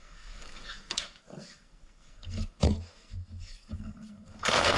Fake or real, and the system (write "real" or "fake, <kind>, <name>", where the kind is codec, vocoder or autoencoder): fake, codec, SNAC